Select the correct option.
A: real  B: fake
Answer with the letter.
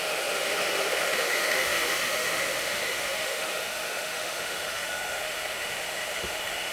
B